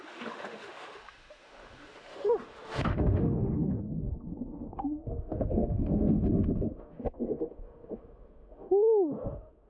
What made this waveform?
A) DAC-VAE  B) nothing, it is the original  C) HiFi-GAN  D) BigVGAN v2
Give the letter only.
A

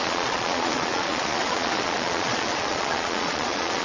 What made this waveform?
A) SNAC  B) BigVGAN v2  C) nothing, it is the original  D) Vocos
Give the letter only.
D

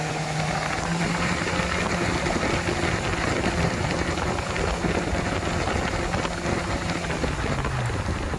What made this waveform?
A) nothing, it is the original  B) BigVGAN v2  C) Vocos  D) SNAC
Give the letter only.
A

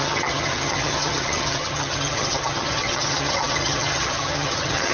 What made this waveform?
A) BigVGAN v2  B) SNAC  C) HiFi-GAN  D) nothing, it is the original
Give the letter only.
C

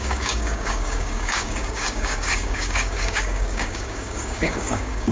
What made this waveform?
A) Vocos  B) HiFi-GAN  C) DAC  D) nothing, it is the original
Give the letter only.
C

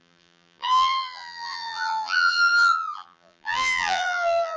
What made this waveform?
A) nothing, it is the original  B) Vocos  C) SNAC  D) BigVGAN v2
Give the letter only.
D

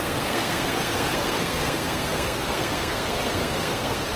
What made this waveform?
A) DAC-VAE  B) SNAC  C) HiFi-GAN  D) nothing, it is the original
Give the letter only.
B